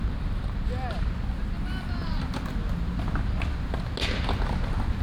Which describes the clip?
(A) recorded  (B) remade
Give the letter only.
A